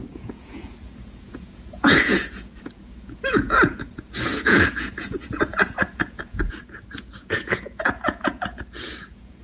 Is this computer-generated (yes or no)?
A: yes